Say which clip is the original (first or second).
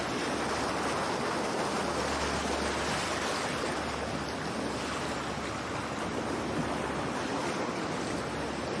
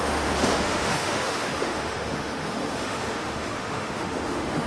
first